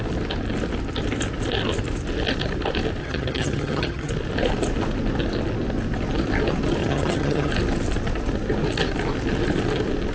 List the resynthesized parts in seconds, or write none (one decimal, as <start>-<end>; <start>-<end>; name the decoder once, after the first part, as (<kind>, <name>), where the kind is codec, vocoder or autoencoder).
3.0-4.1 (vocoder, HiFi-GAN); 6.8-7.5